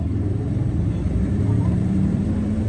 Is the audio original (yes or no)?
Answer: no